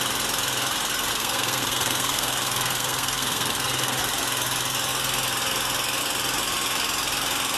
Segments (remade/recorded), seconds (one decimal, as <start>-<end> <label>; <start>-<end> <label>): 0.0-1.1 recorded; 1.1-4.0 remade; 4.0-7.6 recorded